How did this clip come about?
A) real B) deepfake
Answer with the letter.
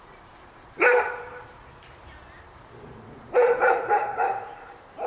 B